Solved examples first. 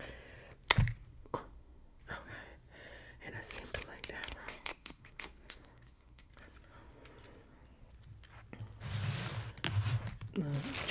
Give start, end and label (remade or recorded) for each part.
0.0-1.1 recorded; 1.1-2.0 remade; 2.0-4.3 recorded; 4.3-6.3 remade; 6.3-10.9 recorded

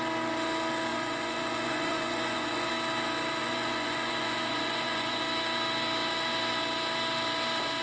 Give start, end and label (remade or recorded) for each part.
0.0-0.9 recorded; 0.9-2.7 remade; 2.7-3.4 recorded; 3.4-5.2 remade; 5.2-7.8 recorded

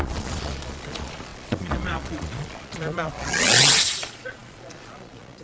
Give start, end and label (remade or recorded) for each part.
0.0-5.4 remade

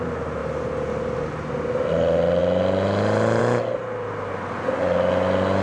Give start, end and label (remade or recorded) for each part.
0.0-5.6 recorded

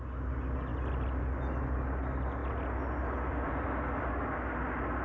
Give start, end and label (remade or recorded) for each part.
0.0-5.0 recorded

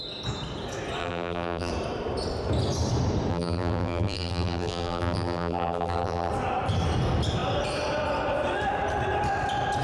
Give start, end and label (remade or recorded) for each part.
0.0-1.0 recorded; 1.0-1.7 remade; 1.7-3.3 recorded; 3.3-6.3 remade; 6.3-9.8 recorded